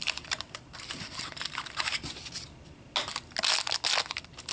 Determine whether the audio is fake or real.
real